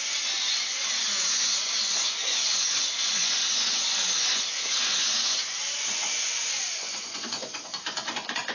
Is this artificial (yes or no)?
yes